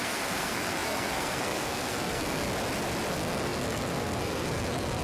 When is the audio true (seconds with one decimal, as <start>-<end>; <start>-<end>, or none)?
2.5-3.1